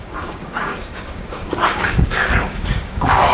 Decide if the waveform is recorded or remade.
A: remade